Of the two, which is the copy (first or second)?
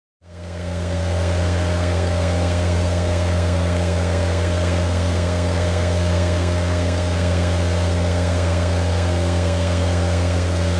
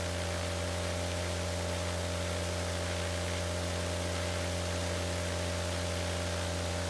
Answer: first